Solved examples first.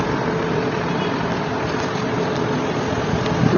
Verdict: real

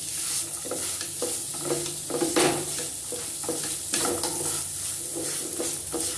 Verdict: real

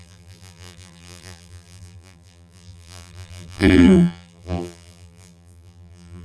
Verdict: fake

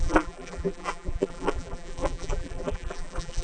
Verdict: fake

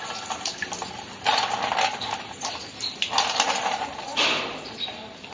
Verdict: real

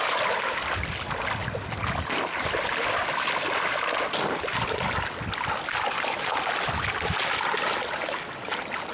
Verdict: real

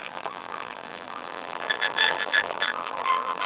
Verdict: fake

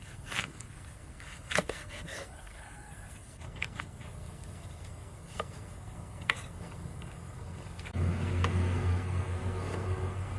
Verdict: fake